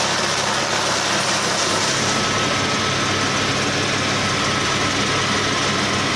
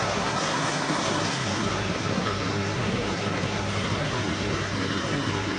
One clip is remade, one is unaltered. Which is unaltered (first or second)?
first